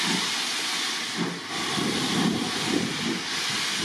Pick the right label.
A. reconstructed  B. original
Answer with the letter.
B